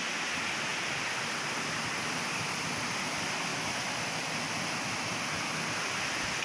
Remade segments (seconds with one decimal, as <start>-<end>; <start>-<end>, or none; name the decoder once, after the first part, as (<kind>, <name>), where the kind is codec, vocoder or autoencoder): none